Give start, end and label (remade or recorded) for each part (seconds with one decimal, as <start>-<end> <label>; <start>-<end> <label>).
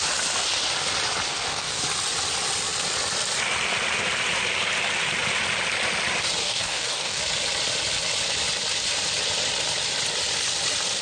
0.0-1.3 recorded; 1.3-1.8 remade; 1.8-6.4 recorded; 6.4-7.2 remade; 7.2-11.0 recorded